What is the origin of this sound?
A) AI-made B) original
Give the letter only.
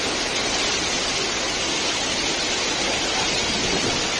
B